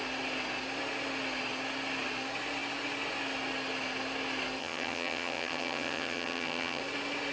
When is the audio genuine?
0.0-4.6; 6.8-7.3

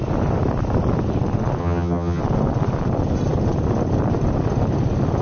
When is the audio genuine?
0.0-1.6; 2.2-5.2

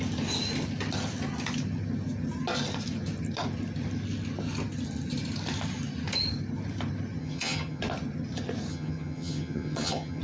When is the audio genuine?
0.0-7.2; 7.8-8.7

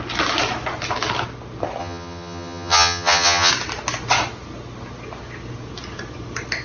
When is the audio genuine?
0.0-1.8; 3.5-6.6

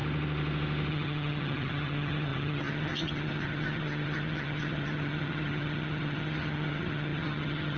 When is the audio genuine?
0.0-0.9

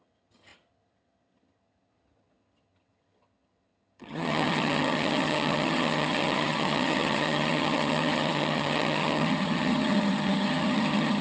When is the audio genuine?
none

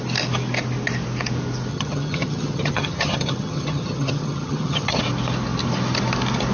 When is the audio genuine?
0.0-1.7; 5.0-6.5

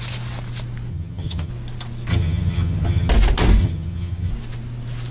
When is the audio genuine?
0.0-0.9; 1.5-2.1; 3.1-3.6; 4.3-5.1